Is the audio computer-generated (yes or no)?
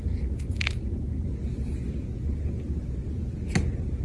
no